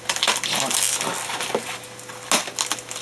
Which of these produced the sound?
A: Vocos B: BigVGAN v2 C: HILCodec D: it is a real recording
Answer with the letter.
D